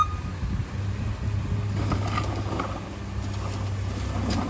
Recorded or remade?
recorded